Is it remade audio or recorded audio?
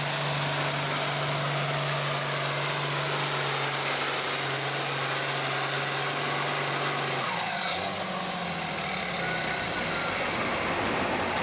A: recorded